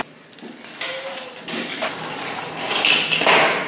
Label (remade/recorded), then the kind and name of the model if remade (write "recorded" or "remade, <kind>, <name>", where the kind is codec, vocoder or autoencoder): recorded